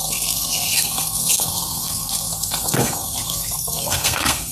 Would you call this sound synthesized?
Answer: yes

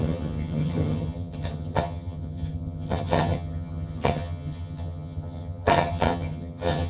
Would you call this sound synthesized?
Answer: yes